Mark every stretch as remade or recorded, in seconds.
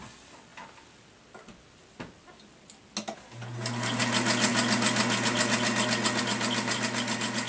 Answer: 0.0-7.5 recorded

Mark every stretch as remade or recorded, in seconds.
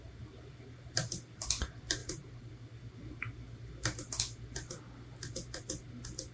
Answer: 0.0-2.0 recorded; 2.0-2.5 remade; 2.5-6.3 recorded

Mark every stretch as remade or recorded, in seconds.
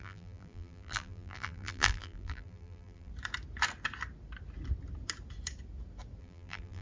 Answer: 0.0-3.1 remade; 3.1-6.2 recorded; 6.2-6.8 remade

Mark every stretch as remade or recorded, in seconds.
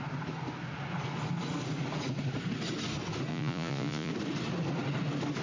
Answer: 0.0-3.3 recorded; 3.3-4.1 remade; 4.1-5.4 recorded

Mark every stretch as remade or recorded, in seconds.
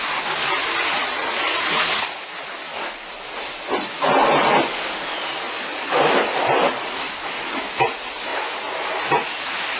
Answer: 0.0-9.8 recorded